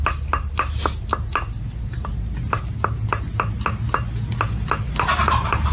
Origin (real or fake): real